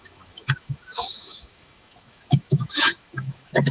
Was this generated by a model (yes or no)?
yes